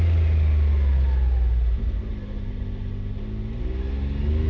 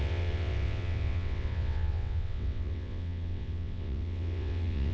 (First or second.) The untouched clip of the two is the first